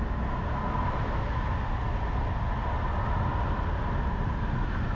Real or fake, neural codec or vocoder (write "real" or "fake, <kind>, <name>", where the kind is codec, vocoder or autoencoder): real